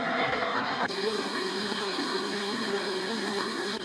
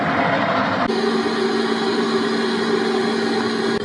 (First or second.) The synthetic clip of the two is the first